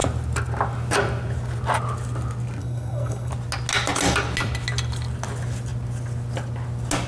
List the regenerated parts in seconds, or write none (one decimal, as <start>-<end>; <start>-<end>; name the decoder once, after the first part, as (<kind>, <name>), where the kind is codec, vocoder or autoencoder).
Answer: 2.6-3.3 (codec, SNAC)